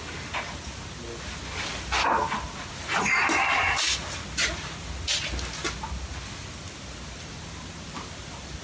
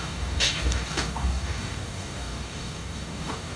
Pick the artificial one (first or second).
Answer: second